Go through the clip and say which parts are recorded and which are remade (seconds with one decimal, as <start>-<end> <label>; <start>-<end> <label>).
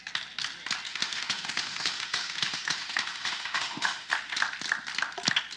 0.0-0.9 recorded; 0.9-4.1 remade; 4.1-5.6 recorded